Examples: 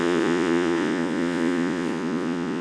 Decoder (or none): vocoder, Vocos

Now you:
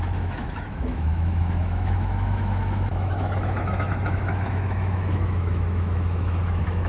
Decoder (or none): autoencoder, DAC-VAE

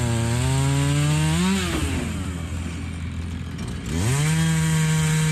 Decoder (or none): none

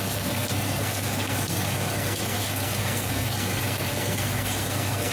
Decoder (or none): codec, SNAC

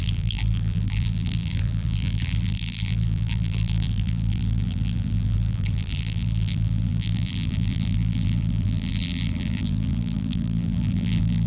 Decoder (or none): vocoder, BigVGAN v2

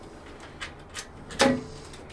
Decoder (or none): none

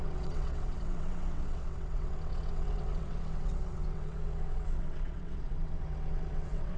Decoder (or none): vocoder, WaveNeXt